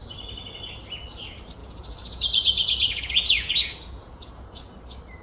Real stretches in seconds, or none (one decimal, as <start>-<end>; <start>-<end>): 0.0-1.6; 4.7-5.2